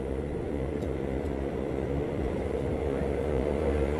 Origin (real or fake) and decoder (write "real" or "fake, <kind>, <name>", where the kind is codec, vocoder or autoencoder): fake, vocoder, Vocos